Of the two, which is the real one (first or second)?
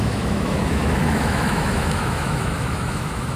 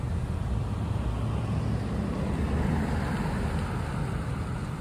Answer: second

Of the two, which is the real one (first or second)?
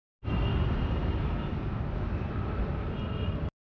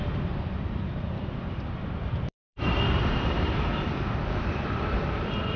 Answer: first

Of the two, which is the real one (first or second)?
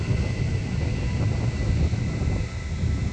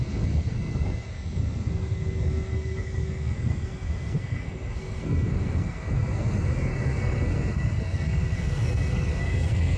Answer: first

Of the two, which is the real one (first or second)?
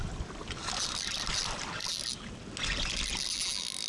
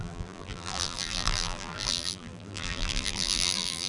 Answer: first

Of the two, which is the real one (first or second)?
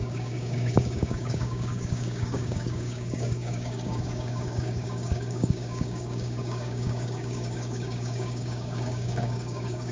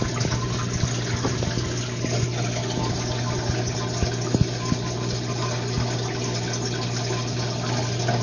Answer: second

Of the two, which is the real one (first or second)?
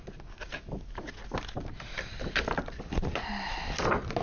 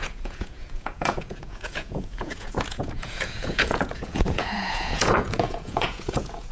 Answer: first